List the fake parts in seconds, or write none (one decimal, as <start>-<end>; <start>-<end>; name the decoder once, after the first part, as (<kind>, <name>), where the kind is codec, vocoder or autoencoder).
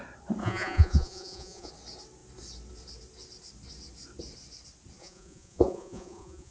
0.4-1.7 (vocoder, Vocos); 5.0-6.5